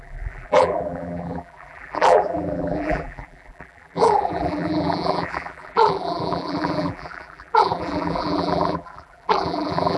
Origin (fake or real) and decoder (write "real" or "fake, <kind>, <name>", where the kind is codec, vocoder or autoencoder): fake, vocoder, BigVGAN v2